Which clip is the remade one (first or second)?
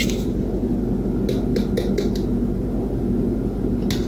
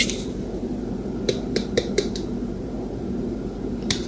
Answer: second